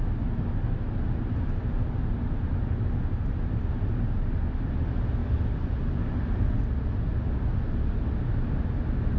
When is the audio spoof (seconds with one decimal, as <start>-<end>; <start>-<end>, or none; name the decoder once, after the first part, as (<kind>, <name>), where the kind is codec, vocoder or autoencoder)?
none